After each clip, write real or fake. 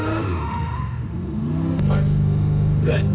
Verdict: fake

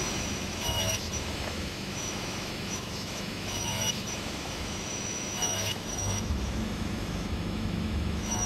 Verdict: fake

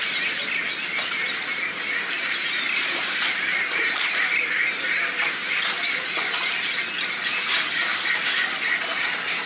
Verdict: real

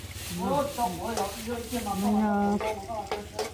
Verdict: real